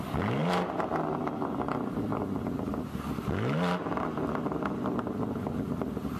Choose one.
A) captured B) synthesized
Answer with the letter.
A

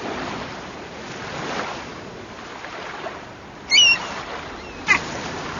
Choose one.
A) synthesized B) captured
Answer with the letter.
B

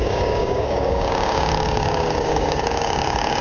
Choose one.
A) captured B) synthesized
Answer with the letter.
B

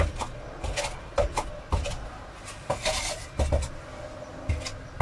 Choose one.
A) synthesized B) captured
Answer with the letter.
B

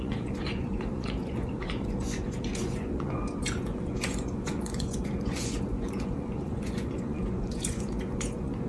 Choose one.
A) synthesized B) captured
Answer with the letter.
A